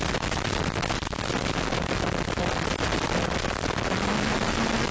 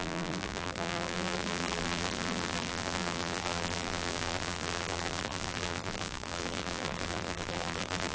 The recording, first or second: first